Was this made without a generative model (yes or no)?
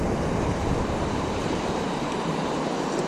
no